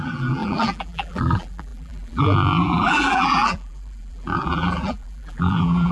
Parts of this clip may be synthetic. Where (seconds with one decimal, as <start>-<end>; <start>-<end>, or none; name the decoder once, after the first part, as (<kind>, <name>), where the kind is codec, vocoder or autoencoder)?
0.0-5.9 (vocoder, BigVGAN v2)